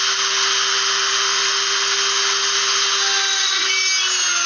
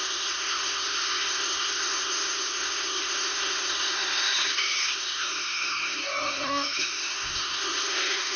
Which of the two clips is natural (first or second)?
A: first